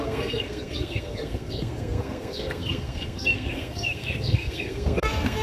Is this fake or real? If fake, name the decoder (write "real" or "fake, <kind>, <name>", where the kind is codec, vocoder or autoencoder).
fake, codec, SNAC